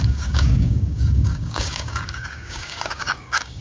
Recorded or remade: remade